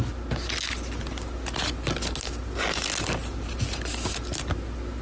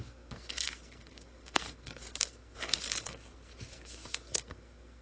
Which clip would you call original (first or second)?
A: first